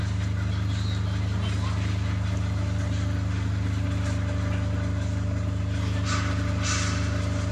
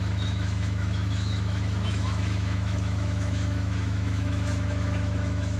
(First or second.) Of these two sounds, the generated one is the second